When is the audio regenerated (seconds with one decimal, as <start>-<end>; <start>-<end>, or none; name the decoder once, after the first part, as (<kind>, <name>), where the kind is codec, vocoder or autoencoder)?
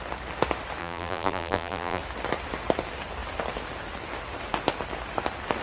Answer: 0.8-2.0 (vocoder, BigVGAN v2)